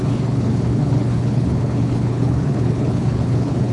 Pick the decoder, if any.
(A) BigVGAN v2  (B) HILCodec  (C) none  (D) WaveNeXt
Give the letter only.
B